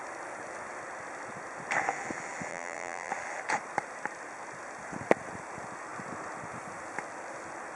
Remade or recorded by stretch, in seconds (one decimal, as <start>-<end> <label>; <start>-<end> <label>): 0.0-2.5 recorded; 2.5-3.1 remade; 3.1-7.8 recorded